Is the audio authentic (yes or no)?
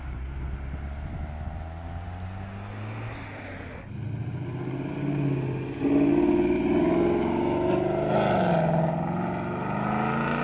yes